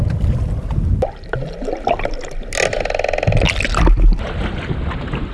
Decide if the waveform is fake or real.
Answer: real